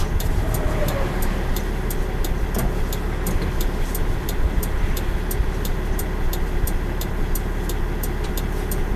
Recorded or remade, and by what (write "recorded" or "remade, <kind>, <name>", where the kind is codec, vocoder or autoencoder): remade, vocoder, BigVGAN v2